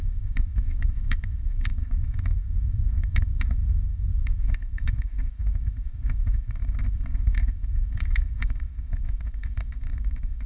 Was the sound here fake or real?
fake